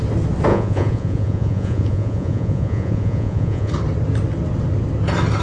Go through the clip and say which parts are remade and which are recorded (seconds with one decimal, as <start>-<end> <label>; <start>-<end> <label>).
0.0-0.5 recorded; 0.5-3.7 remade; 3.7-5.4 recorded

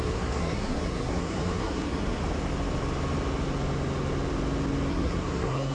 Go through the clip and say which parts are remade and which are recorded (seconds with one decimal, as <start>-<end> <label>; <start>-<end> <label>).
0.0-2.2 remade; 2.2-4.9 recorded; 4.9-5.7 remade

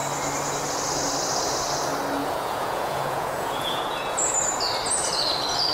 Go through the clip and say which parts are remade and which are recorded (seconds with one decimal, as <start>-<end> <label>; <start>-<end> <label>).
0.0-2.2 recorded; 2.2-4.3 remade; 4.3-5.7 recorded